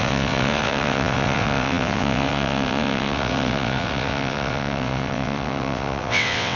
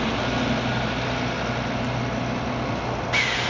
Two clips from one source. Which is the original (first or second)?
second